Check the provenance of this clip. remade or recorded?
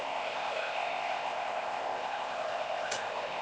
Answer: remade